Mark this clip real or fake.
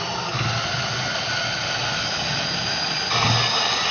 real